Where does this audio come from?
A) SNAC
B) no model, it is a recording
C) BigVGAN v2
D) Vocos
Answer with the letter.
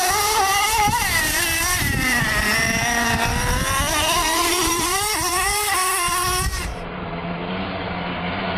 C